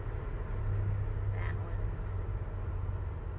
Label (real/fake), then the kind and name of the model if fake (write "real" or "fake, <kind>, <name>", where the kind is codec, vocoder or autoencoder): real